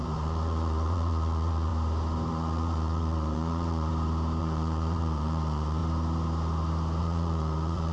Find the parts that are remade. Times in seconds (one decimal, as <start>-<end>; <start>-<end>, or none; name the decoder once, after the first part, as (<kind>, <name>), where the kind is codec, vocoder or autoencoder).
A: 0.0-1.7 (vocoder, Vocos); 2.3-3.9; 4.4-5.8; 7.0-7.9